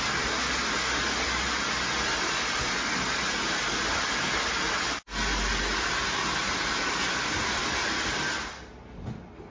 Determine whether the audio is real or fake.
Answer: real